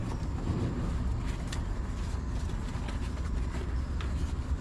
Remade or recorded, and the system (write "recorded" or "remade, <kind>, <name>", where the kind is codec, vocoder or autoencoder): recorded